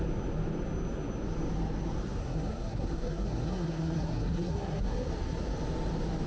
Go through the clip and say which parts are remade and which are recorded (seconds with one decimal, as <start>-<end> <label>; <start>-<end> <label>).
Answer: 0.0-2.2 recorded; 2.2-5.1 remade; 5.1-6.3 recorded